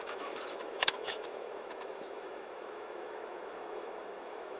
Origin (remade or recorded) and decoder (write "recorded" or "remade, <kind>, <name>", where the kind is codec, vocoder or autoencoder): remade, autoencoder, DAC-VAE